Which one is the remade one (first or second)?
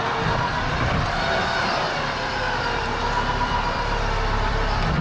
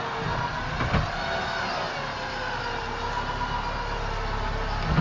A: first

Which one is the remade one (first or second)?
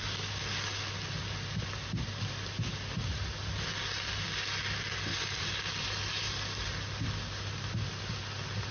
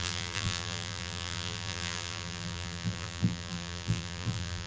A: second